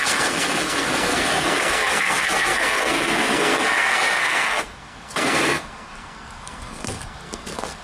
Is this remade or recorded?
remade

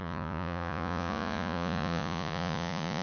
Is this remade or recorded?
remade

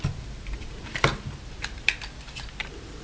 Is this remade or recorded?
recorded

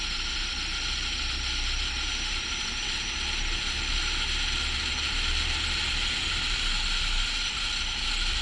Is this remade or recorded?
recorded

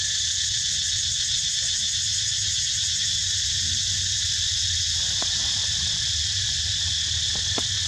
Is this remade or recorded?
recorded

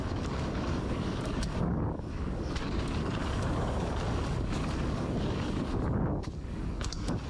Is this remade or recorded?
remade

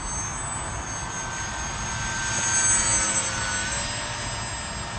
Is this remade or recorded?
recorded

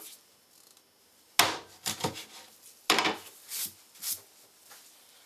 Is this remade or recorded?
recorded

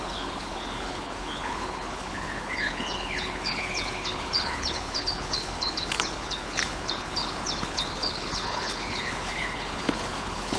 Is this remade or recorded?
remade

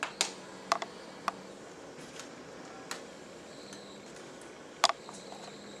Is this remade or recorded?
recorded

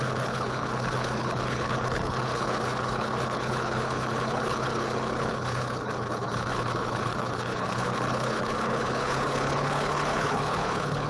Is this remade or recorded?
remade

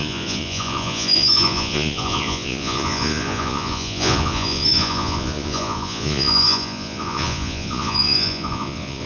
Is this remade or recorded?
remade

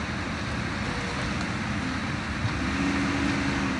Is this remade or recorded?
recorded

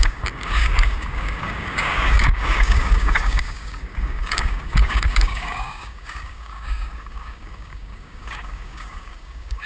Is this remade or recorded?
remade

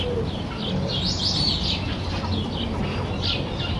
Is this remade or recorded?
recorded